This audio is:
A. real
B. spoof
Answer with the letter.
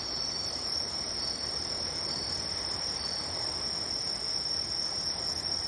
A